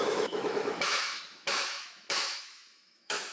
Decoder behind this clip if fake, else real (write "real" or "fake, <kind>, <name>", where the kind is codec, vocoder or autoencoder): fake, autoencoder, DAC-VAE